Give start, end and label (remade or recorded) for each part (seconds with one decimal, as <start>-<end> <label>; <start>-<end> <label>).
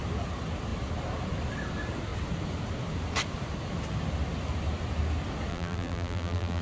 0.0-5.5 recorded; 5.5-6.6 remade